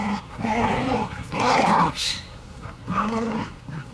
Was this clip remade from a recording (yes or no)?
yes